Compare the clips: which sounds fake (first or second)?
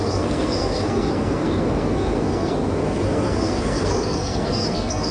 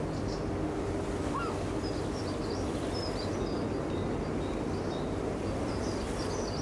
first